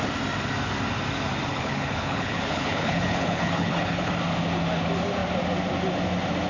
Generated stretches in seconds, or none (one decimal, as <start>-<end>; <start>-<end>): 1.5-4.1